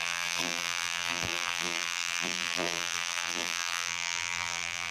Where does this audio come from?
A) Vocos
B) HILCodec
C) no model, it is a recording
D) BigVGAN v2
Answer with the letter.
D